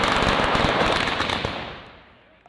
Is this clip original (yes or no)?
yes